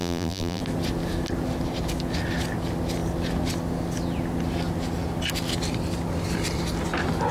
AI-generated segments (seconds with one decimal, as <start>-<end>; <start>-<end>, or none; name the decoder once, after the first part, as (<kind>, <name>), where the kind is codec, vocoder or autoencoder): 0.0-0.6 (vocoder, BigVGAN v2)